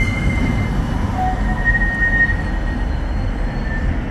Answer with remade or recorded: recorded